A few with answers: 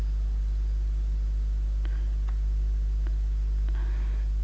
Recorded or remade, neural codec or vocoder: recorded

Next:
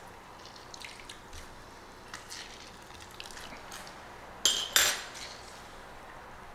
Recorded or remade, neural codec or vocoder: recorded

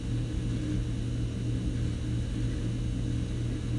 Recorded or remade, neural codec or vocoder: recorded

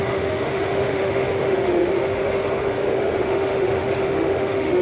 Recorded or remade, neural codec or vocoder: remade, autoencoder, DAC-VAE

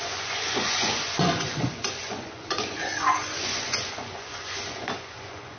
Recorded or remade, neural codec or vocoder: remade, vocoder, Vocos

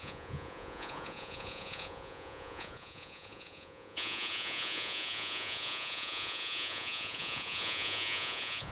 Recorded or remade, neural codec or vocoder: remade, vocoder, Vocos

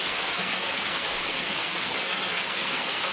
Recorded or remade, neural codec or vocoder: remade, codec, SNAC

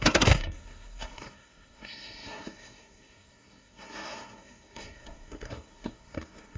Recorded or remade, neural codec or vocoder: remade, codec, SNAC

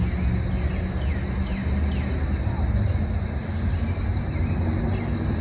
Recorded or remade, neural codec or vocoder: recorded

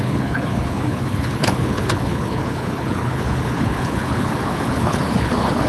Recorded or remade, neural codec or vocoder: remade, codec, HILCodec